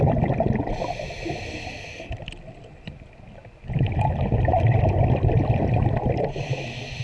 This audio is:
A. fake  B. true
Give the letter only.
B